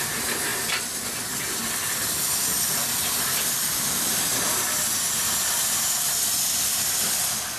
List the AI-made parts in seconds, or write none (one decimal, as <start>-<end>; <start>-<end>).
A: none